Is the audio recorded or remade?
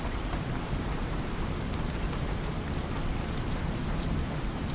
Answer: remade